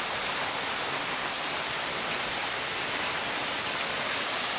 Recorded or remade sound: recorded